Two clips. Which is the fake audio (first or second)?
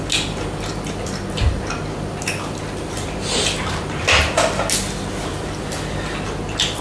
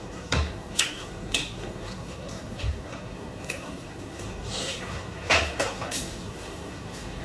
second